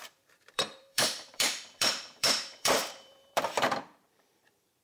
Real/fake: fake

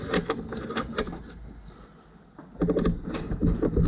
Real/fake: real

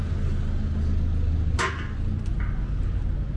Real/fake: real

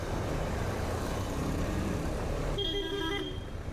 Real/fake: fake